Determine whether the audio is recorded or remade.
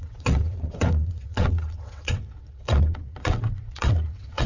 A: remade